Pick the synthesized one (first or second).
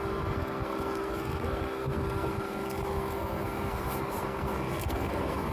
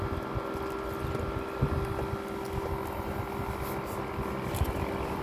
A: first